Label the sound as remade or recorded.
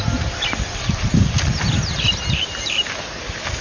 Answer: recorded